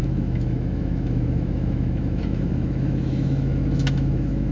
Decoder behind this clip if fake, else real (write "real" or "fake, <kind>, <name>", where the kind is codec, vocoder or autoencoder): fake, autoencoder, DAC-VAE